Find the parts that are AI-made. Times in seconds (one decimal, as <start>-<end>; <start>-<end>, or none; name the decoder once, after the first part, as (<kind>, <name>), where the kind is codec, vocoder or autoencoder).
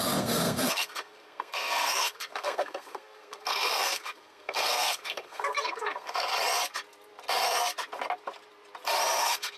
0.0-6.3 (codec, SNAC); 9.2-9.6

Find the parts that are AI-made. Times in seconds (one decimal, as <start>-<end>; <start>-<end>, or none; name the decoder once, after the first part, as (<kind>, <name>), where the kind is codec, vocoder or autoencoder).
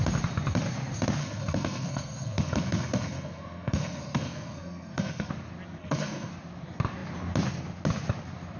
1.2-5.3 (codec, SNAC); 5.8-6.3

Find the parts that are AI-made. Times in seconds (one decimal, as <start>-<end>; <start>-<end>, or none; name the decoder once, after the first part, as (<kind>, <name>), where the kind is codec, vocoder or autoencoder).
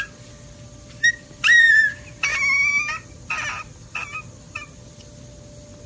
none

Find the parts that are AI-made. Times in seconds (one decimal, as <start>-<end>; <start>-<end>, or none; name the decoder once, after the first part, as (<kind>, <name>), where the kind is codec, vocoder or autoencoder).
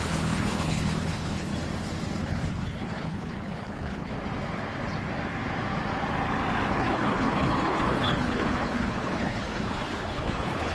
0.0-1.5 (codec, HILCodec); 2.2-4.1; 6.7-10.7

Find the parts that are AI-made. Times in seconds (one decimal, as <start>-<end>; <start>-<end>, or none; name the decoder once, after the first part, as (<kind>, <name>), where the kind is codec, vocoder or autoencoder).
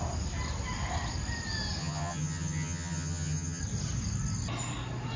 1.8-3.6 (vocoder, HiFi-GAN)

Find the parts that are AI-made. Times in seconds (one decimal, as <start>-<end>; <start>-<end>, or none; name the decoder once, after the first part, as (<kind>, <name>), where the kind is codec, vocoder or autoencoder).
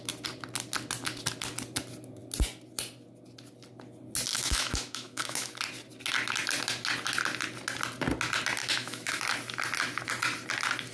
4.3-5.5 (autoencoder, DAC-VAE); 8.6-9.2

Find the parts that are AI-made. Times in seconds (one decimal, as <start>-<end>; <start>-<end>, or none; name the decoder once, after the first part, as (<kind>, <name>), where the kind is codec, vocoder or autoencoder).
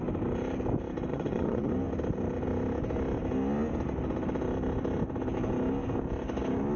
1.1-1.7 (vocoder, HiFi-GAN)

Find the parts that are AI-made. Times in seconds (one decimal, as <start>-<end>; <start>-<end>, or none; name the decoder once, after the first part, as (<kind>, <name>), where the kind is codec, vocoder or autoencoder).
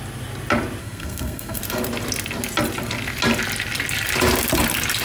0.8-1.6 (codec, SNAC)